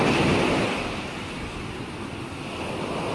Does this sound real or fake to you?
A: real